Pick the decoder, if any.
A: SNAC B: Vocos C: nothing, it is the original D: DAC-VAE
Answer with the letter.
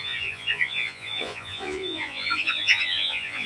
B